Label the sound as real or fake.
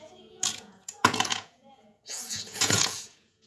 fake